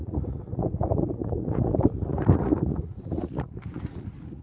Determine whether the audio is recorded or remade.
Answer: remade